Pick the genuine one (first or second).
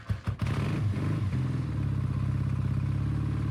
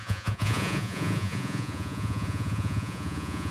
first